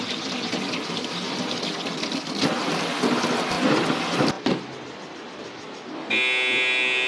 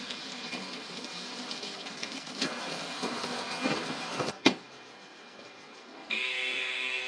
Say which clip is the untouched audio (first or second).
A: first